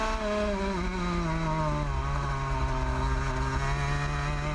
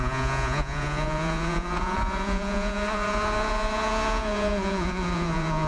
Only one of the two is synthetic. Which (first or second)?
second